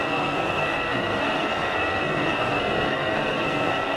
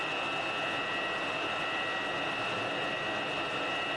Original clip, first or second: second